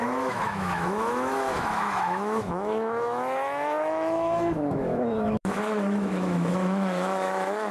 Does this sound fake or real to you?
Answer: fake